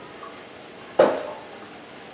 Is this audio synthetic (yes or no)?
no